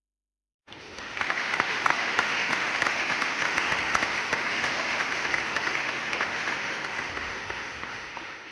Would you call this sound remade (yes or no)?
yes